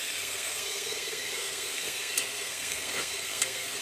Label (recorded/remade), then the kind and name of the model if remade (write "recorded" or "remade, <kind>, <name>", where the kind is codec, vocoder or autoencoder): remade, codec, SNAC